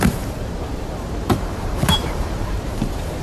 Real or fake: fake